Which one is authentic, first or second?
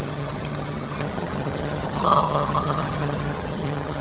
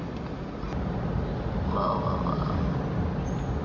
second